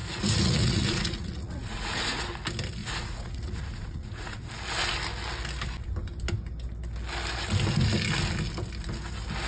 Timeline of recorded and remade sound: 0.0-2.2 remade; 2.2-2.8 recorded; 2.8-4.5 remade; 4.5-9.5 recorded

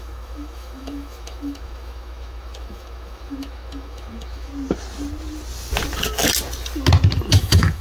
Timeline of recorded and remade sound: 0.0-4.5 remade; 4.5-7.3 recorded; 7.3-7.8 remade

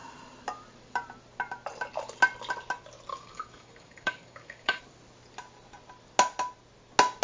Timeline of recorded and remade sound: 0.0-3.1 recorded; 3.1-4.8 remade; 4.8-7.2 recorded